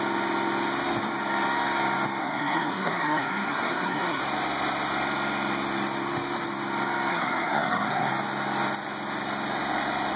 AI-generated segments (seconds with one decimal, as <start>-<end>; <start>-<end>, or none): 2.2-4.2; 7.1-8.1